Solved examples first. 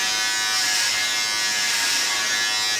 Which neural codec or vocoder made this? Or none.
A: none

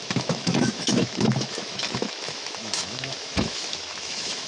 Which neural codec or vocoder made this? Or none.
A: autoencoder, DAC-VAE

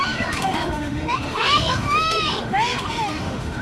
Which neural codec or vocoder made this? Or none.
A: autoencoder, DAC-VAE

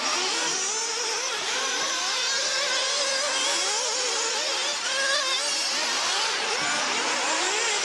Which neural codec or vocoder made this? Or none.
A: none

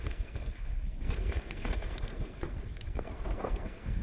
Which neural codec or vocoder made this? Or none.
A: codec, SNAC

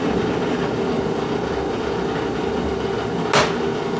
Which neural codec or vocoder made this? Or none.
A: none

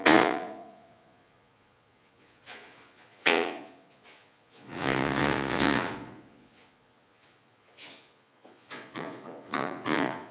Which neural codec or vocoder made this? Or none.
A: vocoder, Vocos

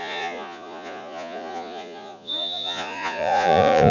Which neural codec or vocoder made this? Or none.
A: vocoder, Vocos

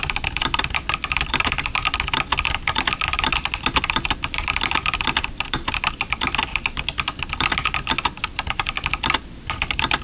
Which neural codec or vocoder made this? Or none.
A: none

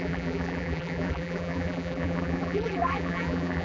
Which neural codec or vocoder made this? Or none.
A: vocoder, BigVGAN v2